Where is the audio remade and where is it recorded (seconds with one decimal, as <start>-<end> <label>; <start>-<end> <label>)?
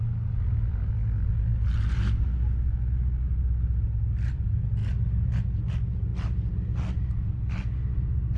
0.0-8.4 recorded